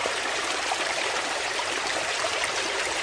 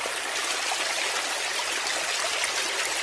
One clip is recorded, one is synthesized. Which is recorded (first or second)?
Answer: second